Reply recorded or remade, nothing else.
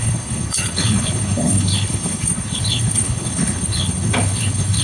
remade